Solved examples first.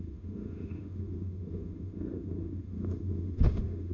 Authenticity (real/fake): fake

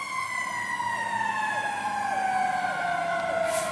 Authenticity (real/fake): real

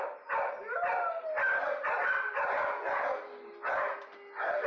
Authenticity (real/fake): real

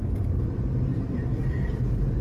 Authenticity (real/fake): fake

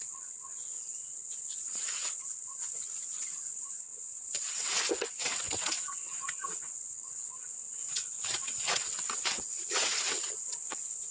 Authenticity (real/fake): fake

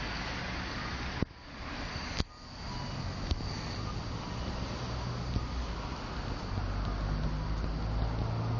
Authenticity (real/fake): real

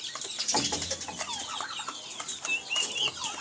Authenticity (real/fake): real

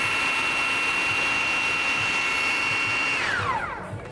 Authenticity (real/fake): real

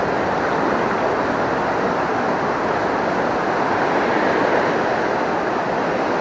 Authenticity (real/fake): real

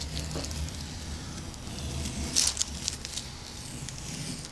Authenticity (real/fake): real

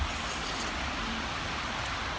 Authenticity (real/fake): real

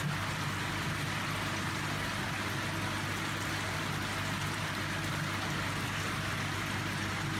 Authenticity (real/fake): real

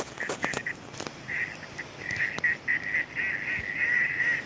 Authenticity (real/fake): real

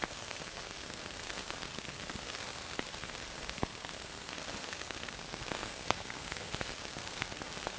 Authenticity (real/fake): fake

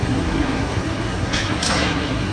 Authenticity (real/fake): fake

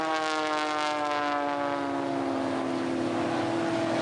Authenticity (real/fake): real